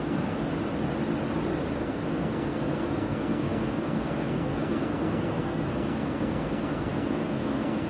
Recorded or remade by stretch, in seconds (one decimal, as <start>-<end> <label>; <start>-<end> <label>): 0.0-0.5 remade; 0.5-1.8 recorded; 1.8-7.9 remade